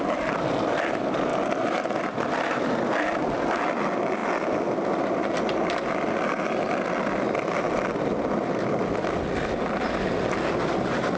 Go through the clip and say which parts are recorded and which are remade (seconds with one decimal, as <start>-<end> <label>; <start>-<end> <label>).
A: 0.0-11.2 recorded